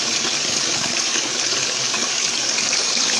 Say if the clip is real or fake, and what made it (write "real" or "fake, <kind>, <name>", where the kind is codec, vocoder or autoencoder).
fake, codec, DAC